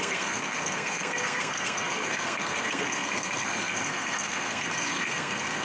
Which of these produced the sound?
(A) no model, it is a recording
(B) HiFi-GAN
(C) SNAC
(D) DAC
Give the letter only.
C